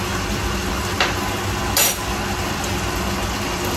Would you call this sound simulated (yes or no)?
no